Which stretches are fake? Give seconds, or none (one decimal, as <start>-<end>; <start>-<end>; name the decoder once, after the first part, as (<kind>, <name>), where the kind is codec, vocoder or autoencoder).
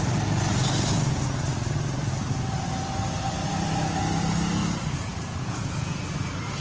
5.1-6.0 (vocoder, Vocos)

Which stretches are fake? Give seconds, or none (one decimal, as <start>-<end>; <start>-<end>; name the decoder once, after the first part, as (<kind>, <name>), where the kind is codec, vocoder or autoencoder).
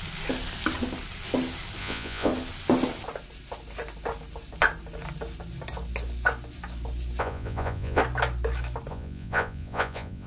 1.8-2.3 (vocoder, Vocos); 7.2-8.0; 8.9-10.3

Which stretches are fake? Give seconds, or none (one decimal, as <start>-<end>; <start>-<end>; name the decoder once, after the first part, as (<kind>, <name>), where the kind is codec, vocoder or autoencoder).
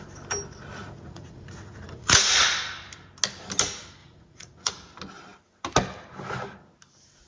0.8-2.4 (vocoder, Vocos); 4.0-4.7